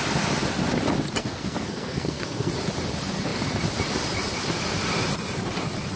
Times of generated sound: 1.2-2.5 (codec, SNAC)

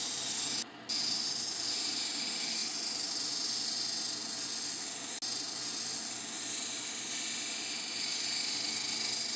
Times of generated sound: none

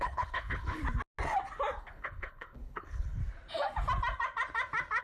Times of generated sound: 0.0-0.8 (codec, HILCodec); 1.8-3.2